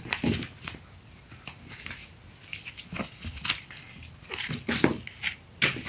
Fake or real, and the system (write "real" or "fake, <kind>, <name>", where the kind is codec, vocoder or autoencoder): real